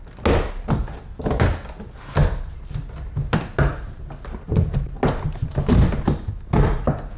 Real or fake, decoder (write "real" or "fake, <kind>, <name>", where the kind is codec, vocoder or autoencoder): real